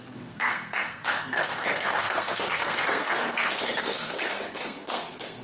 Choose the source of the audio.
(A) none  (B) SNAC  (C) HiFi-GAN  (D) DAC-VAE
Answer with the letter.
B